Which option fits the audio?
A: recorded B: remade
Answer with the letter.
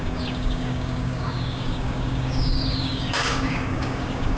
B